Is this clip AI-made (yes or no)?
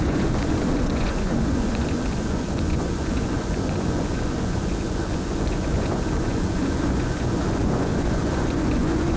yes